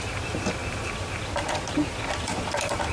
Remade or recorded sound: recorded